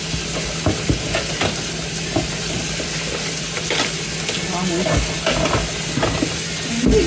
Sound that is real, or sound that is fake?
real